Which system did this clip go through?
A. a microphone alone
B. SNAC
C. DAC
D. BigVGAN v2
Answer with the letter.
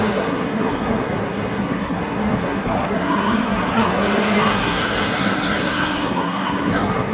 B